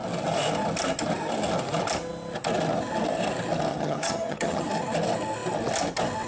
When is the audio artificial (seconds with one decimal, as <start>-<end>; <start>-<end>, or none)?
3.7-4.7